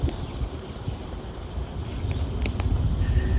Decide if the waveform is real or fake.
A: real